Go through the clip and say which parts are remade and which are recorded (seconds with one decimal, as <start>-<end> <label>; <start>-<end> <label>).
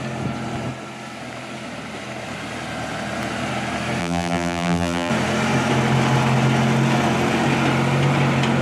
0.0-4.0 recorded; 4.0-5.1 remade; 5.1-8.6 recorded